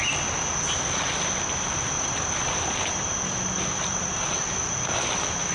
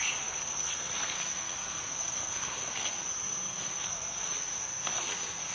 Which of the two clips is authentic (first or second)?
first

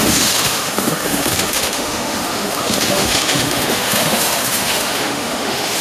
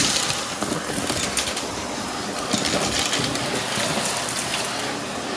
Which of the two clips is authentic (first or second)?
second